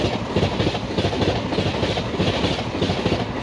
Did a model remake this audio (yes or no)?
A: no